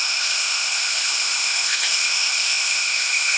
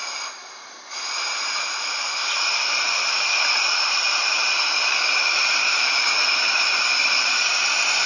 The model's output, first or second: first